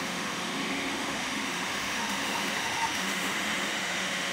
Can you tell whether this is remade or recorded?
remade